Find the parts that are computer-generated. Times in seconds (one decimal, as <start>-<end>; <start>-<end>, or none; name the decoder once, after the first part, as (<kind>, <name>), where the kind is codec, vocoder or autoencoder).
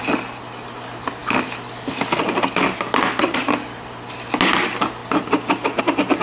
none